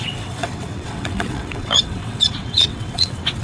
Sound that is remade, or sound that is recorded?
remade